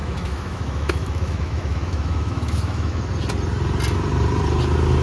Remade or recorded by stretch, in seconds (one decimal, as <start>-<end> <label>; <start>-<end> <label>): 0.0-3.0 remade; 3.0-5.0 recorded